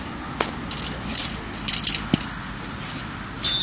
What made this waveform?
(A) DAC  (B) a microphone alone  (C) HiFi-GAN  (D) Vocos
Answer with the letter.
B